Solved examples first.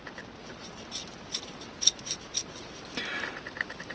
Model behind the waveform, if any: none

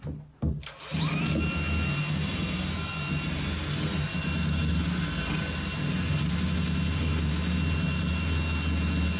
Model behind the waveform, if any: none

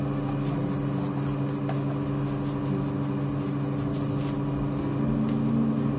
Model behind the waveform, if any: none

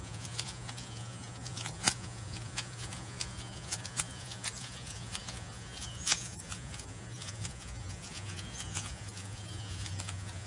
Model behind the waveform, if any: vocoder, Vocos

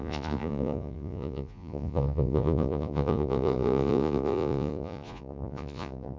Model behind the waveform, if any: vocoder, Vocos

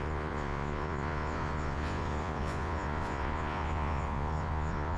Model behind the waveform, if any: vocoder, Vocos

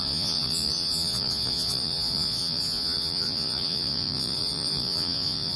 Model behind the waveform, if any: vocoder, Vocos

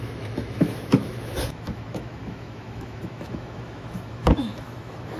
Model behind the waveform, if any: autoencoder, DAC-VAE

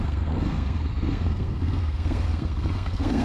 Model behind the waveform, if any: codec, SNAC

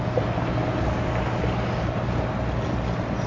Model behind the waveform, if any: none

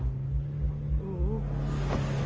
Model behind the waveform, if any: none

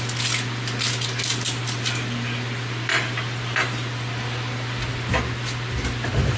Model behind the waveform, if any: none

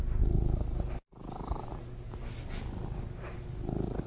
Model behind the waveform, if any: none